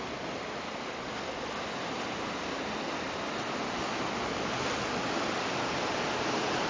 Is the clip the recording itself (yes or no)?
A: yes